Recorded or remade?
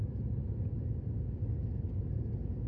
recorded